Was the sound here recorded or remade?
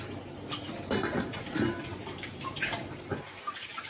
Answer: recorded